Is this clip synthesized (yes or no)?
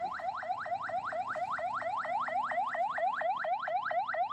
no